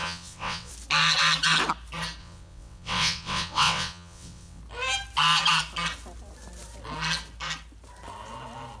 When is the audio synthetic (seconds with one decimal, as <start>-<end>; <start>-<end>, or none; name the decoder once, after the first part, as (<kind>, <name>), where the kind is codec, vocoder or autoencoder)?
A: 0.0-0.7 (vocoder, WaveNeXt); 2.2-4.6

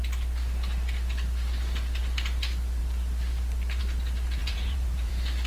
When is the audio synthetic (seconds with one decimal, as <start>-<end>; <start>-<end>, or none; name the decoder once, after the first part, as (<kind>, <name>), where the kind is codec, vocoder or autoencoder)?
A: 4.4-5.1 (vocoder, Vocos)

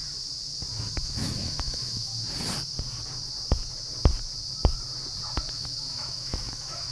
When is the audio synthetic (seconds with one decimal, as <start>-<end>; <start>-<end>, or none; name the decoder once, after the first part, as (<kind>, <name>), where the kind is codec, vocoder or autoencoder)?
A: 1.0-2.1 (autoencoder, DAC-VAE); 5.5-6.9

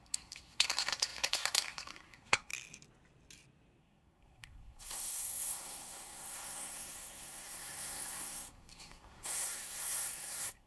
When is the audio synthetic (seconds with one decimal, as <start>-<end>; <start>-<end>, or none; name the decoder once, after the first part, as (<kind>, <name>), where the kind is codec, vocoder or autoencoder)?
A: 0.0-2.5 (codec, SNAC); 3.8-10.7